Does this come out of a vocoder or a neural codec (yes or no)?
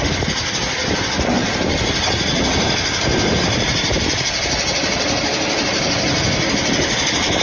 yes